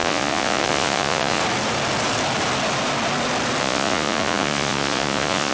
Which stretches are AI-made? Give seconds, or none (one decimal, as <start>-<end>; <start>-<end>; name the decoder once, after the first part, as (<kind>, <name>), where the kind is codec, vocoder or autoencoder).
0.0-1.4 (vocoder, Vocos); 3.6-5.5